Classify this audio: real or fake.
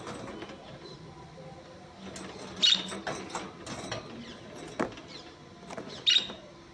real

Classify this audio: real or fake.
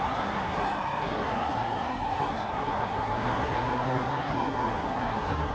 fake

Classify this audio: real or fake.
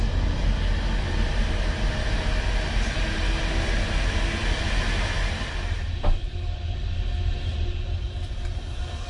real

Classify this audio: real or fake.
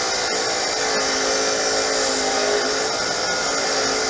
real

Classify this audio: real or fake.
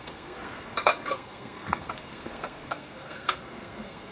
fake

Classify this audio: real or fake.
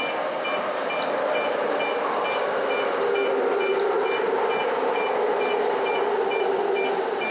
real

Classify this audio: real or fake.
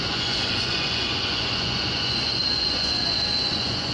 fake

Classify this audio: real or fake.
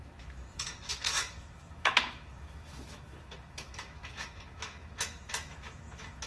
fake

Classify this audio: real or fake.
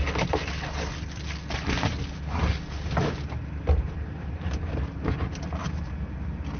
real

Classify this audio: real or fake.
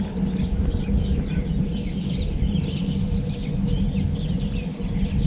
real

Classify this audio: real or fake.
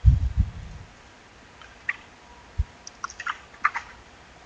real